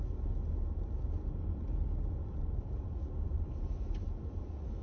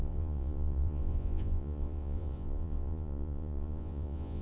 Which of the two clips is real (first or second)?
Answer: first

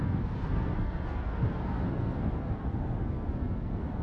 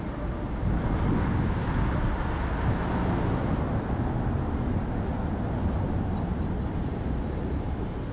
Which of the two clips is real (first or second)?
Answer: second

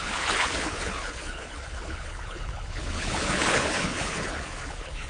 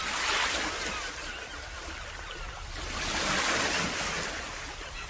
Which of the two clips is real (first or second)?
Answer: second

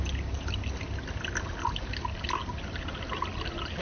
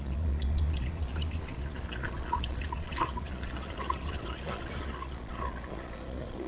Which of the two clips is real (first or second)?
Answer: first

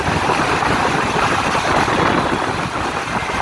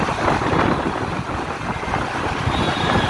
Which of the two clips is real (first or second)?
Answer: first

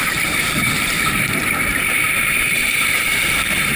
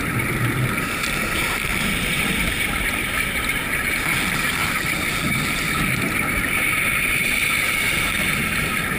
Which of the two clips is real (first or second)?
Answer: second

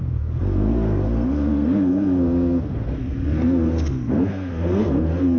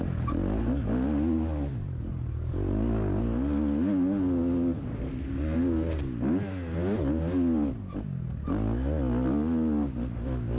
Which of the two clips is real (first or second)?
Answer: second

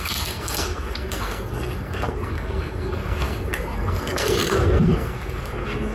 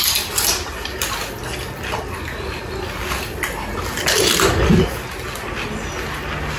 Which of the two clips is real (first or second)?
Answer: second